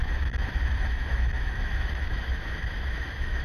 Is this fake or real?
fake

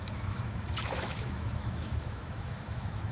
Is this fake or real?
fake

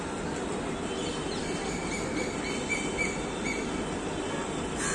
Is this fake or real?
real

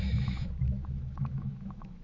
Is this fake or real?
fake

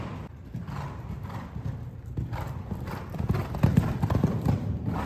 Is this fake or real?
real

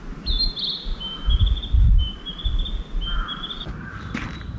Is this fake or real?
real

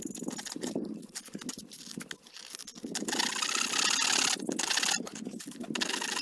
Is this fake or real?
real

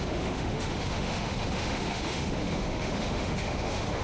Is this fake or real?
fake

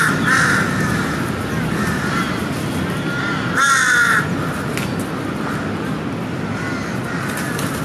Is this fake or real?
real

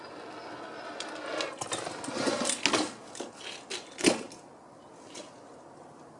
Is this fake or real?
real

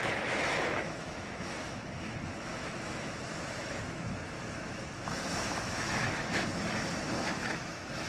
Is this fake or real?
fake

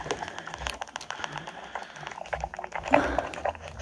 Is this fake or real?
real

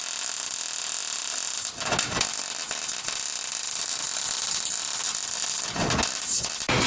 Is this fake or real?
real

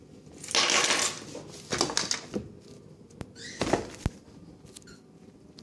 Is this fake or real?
real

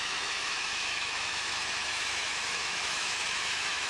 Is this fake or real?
fake